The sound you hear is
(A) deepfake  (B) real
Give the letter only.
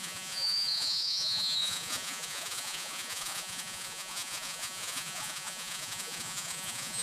A